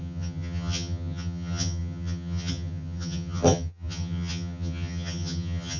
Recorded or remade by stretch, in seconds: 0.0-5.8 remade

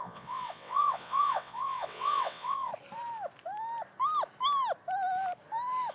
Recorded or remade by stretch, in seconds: 0.0-2.7 remade; 2.7-5.9 recorded